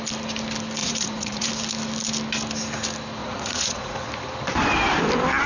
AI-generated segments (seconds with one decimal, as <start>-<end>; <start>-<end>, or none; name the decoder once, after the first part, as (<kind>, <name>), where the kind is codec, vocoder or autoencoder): 0.8-1.5 (vocoder, Vocos); 3.2-4.0